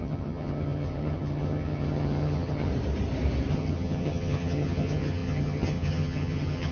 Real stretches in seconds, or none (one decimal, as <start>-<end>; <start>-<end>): 2.7-3.5